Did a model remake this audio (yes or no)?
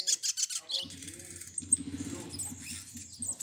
no